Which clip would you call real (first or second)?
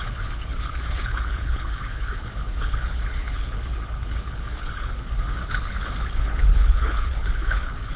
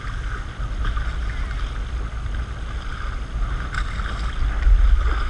second